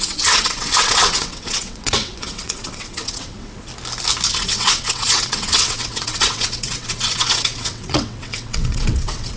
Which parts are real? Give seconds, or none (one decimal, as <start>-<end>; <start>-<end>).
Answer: 3.7-4.3